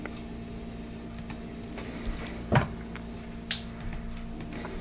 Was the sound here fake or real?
real